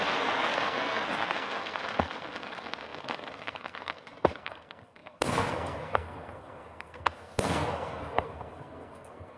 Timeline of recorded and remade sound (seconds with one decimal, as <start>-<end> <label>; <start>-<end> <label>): 0.0-9.4 remade